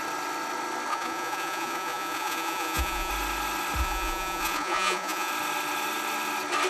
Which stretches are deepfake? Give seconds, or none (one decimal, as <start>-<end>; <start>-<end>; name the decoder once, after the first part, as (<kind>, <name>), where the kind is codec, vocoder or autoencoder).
0.9-3.1 (vocoder, Vocos); 3.8-5.3